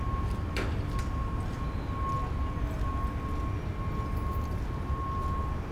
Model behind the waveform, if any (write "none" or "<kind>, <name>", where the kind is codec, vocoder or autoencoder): none